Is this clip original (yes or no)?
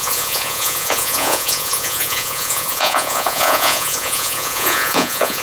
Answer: no